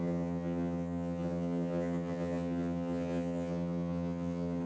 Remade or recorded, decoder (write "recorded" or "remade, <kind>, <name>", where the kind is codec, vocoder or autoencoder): remade, vocoder, HiFi-GAN